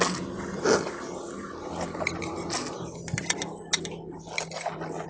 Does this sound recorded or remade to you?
recorded